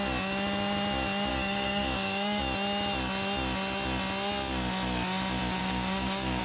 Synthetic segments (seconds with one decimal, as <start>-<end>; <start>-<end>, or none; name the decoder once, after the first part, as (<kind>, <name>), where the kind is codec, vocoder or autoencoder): 1.3-2.4 (codec, DAC); 5.6-6.4